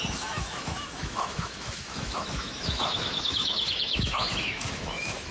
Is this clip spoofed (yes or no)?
yes